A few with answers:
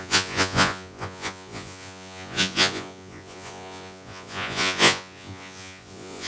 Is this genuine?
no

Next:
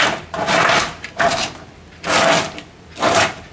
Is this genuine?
yes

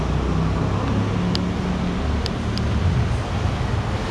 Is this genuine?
yes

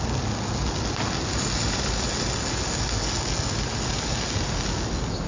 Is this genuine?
yes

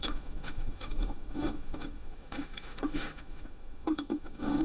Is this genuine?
no